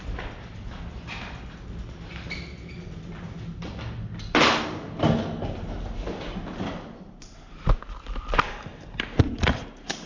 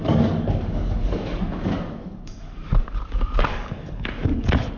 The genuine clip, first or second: first